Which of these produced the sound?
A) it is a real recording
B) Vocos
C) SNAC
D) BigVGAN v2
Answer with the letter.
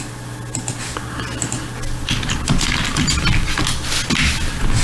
A